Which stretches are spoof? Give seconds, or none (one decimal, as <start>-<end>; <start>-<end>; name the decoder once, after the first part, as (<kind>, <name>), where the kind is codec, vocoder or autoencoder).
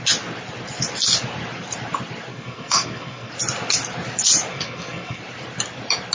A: 2.3-3.3 (codec, SNAC); 4.5-5.2